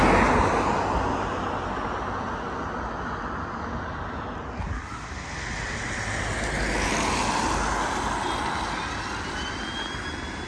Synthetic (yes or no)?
no